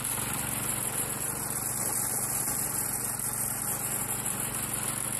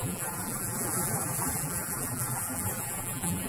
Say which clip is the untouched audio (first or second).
first